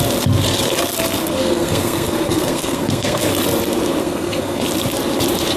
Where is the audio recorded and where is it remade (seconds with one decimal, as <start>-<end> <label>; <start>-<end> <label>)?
0.0-1.2 recorded; 1.2-3.3 remade; 3.3-4.0 recorded; 4.0-4.6 remade; 4.6-5.6 recorded